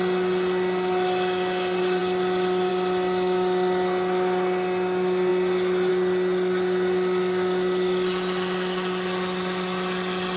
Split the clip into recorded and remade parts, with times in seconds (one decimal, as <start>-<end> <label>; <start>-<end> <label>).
0.0-10.4 recorded